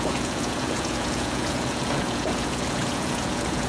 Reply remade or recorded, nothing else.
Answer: remade